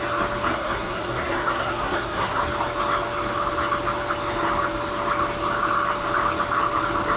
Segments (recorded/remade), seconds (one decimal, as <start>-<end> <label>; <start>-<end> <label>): 0.0-0.5 recorded; 0.5-2.4 remade; 2.4-7.2 recorded